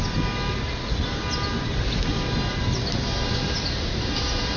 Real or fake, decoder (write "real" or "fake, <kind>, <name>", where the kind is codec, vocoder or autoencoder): real